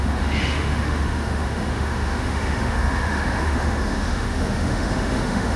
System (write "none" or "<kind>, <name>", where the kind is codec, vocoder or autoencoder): autoencoder, DAC-VAE